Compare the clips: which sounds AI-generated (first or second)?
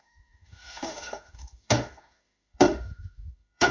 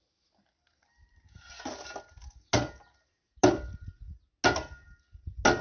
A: first